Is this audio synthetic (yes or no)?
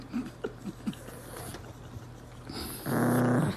no